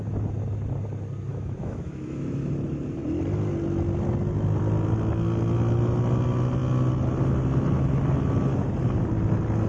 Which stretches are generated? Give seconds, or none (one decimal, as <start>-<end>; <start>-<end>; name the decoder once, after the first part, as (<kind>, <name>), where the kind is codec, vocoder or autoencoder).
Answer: 1.3-2.5 (autoencoder, DAC-VAE)